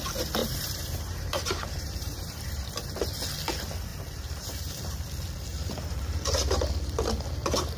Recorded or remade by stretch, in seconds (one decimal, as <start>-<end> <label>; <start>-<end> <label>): 0.0-0.4 recorded; 0.4-2.9 remade; 2.9-3.9 recorded; 3.9-4.8 remade; 4.8-5.5 recorded; 5.5-6.3 remade; 6.3-7.8 recorded